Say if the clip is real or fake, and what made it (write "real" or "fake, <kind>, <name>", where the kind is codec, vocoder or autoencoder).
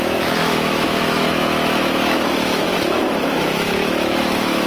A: fake, autoencoder, DAC-VAE